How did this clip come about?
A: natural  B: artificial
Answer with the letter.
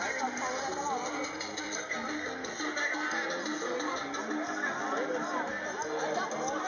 A